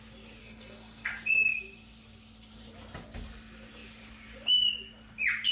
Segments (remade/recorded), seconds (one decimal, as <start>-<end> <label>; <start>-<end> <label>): 0.0-0.4 recorded; 0.4-1.1 remade; 1.1-5.5 recorded